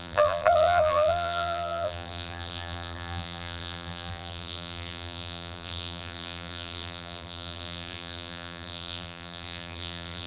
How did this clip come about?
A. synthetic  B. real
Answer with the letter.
A